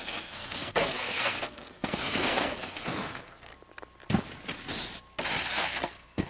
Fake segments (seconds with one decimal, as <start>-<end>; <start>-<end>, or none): 0.0-3.5; 5.5-6.3